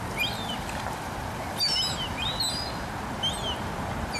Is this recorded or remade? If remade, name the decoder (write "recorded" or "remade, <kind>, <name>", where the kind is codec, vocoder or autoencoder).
recorded